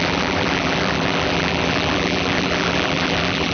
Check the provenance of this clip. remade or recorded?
remade